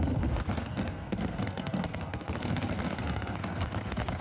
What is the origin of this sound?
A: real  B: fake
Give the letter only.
B